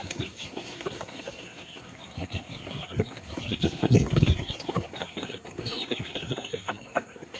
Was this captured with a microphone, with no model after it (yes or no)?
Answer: no